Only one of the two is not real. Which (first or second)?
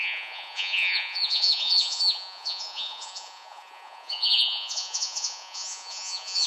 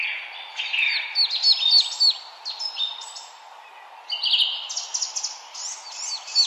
first